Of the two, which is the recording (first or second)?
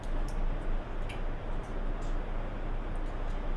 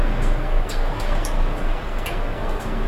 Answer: first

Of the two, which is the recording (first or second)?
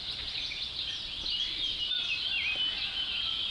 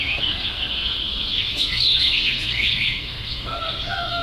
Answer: first